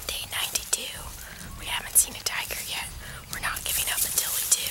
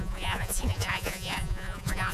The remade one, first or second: second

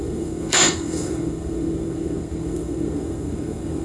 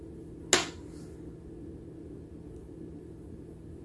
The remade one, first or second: first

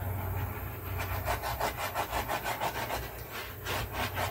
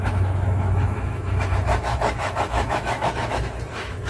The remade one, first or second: second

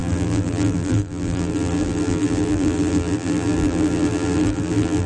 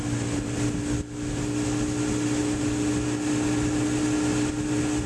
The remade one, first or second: first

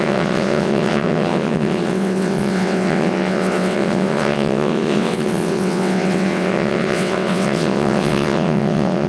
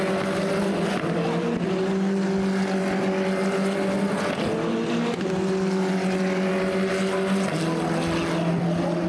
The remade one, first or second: first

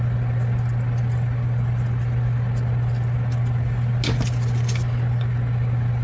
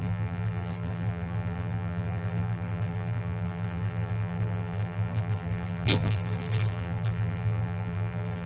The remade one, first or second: second